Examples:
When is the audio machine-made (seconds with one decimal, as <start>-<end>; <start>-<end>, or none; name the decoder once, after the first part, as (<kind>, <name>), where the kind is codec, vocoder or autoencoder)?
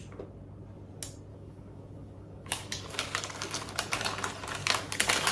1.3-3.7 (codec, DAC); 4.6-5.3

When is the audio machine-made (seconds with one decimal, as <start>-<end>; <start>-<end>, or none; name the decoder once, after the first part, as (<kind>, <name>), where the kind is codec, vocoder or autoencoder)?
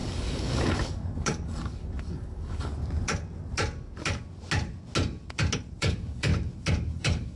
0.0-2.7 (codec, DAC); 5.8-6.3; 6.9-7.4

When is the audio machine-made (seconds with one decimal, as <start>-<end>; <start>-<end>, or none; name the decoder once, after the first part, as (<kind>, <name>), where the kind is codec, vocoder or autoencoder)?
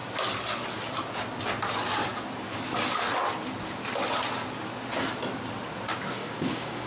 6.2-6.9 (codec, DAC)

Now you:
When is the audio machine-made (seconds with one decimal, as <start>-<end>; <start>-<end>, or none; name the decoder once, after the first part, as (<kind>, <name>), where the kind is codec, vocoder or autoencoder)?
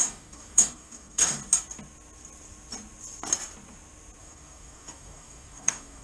0.0-1.4 (codec, DAC); 4.2-6.0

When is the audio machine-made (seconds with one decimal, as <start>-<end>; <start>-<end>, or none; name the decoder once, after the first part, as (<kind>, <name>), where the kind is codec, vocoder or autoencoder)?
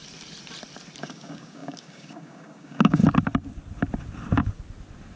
1.0-3.0 (codec, DAC)